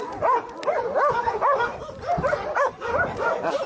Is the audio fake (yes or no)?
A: no